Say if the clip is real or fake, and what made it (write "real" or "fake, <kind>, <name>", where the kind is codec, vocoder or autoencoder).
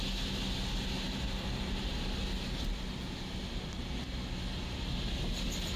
real